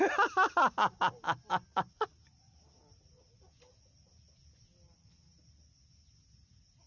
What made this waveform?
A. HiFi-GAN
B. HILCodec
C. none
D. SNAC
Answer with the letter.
C